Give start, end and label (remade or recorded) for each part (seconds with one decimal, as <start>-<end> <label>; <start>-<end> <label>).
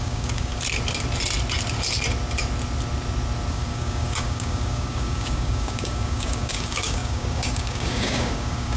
0.0-0.5 remade; 0.5-3.5 recorded; 3.5-8.8 remade